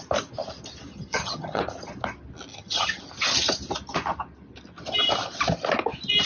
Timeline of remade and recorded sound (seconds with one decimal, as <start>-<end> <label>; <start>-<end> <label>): 0.0-0.9 recorded; 0.9-1.6 remade; 1.6-2.5 recorded; 2.5-3.0 remade; 3.0-6.3 recorded